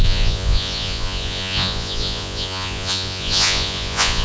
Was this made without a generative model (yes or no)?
no